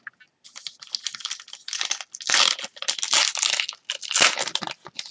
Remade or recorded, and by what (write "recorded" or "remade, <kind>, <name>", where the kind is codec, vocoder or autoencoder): recorded